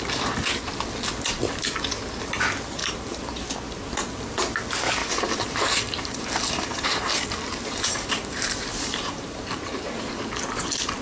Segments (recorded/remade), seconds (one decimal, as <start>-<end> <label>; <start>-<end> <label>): 0.0-2.8 recorded; 2.8-3.3 remade; 3.3-5.0 recorded; 5.0-10.2 remade; 10.2-11.0 recorded